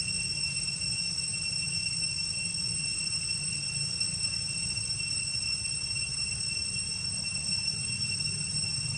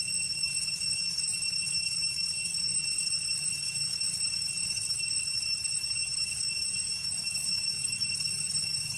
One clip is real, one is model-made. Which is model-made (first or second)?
second